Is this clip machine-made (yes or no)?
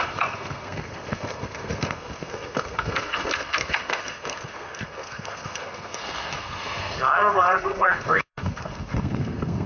yes